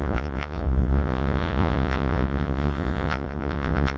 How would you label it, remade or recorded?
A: remade